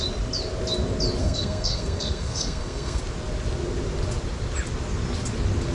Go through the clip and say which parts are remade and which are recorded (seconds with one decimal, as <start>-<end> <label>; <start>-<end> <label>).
0.0-1.2 recorded; 1.2-3.0 remade; 3.0-5.7 recorded